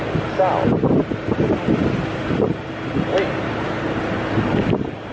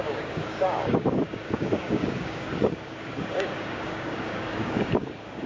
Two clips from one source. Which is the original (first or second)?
first